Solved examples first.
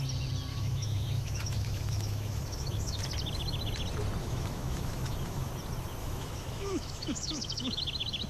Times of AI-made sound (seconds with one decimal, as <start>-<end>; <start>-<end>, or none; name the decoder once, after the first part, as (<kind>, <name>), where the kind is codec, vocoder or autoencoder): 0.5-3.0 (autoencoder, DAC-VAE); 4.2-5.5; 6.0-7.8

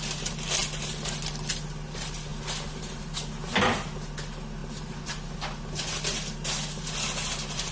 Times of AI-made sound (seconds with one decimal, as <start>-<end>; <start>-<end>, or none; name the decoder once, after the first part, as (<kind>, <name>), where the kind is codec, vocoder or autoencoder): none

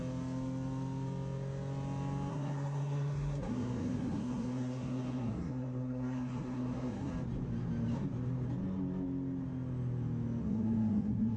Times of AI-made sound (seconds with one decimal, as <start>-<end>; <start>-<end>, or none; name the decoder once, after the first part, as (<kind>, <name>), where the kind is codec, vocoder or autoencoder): 2.3-7.1 (codec, SNAC); 10.4-11.4

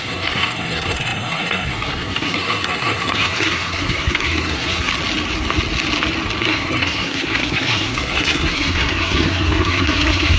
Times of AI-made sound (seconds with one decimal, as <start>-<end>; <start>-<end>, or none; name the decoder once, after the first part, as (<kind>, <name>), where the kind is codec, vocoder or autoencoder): 0.0-4.9 (codec, SNAC); 6.4-10.4

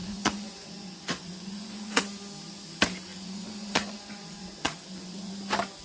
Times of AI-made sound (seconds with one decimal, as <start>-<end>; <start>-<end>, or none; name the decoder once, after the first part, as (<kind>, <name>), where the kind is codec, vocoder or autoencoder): 0.0-2.0 (vocoder, Vocos); 3.1-5.3

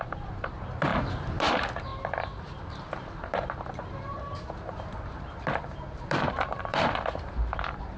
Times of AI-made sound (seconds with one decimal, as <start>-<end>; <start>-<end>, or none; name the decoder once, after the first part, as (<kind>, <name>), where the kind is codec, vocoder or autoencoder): 0.0-8.0 (vocoder, BigVGAN v2)

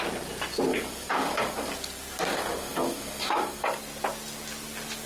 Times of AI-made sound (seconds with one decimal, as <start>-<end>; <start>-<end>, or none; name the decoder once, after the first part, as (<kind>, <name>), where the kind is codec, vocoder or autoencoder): 0.7-1.7 (codec, DAC); 2.3-3.8